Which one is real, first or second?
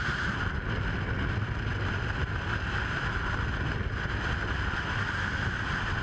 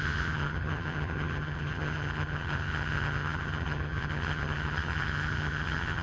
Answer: first